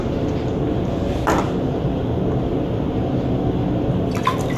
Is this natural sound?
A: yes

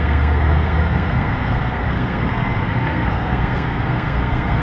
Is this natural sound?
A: no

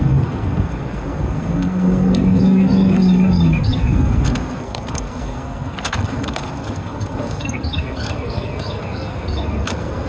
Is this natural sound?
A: no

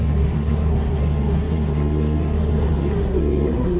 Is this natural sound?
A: no